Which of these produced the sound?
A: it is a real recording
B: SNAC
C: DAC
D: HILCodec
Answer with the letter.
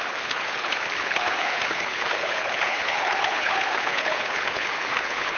D